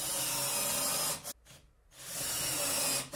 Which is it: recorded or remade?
recorded